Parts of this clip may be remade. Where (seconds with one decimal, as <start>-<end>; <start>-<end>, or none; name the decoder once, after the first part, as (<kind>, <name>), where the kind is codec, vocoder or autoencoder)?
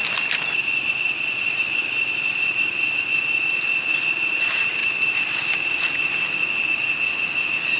0.0-3.5 (vocoder, BigVGAN v2); 4.8-5.4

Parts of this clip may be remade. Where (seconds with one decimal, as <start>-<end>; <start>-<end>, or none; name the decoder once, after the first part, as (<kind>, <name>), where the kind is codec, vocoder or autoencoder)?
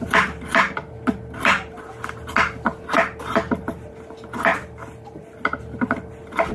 none